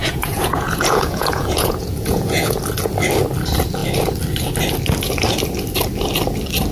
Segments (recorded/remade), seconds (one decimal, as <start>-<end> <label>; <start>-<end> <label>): 0.0-2.6 remade; 2.6-6.7 recorded